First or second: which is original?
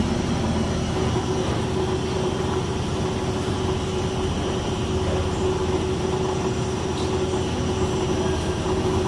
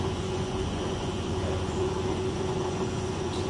first